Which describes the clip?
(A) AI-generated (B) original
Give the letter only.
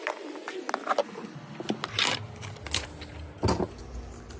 B